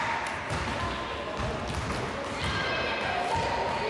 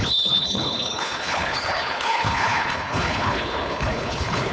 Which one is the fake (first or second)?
second